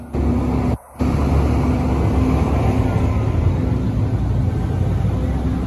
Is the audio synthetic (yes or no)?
no